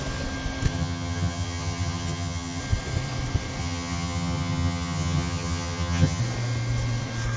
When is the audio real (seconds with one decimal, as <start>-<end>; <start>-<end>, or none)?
0.0-0.7; 2.6-3.6; 6.2-7.4